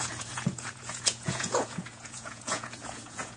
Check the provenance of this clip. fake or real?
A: fake